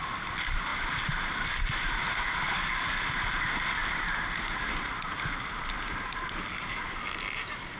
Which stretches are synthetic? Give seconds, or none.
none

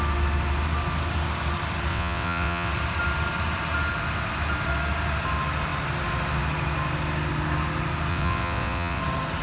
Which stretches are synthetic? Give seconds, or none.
1.9-2.7 (vocoder, WaveNeXt); 8.1-9.0